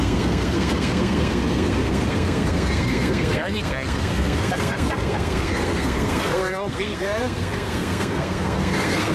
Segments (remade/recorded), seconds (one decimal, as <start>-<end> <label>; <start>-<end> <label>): 0.0-9.1 remade